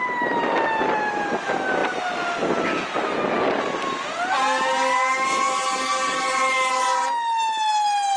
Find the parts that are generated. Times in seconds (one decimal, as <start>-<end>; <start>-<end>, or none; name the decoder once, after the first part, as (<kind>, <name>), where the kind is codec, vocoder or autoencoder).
none